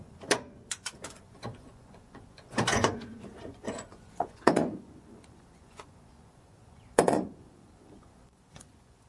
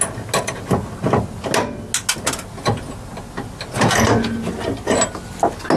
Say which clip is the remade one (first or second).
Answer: first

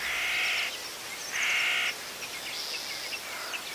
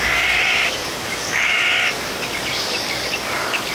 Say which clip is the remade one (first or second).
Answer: second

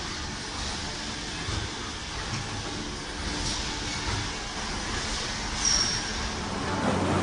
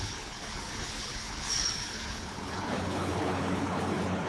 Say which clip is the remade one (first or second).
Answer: second